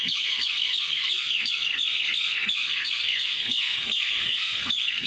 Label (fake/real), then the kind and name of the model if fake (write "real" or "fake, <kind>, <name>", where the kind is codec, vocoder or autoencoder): fake, codec, SNAC